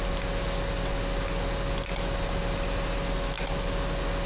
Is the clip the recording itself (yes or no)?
yes